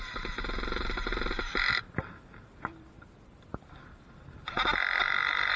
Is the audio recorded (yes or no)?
no